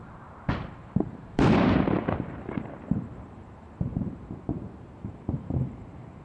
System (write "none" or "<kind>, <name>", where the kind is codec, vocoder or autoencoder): vocoder, BigVGAN v2